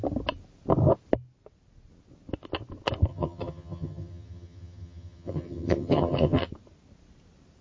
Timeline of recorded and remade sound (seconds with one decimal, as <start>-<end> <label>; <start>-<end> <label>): 0.0-3.1 recorded; 3.1-6.5 remade; 6.5-7.6 recorded